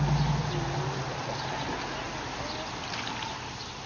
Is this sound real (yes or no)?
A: yes